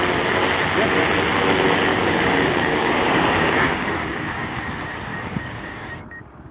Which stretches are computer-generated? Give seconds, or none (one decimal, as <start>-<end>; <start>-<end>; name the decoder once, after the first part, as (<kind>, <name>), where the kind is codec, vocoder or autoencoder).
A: 1.9-4.6 (codec, DAC); 5.1-5.9